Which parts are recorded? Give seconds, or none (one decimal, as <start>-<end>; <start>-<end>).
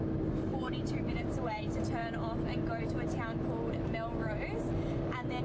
0.0-0.5; 1.6-5.4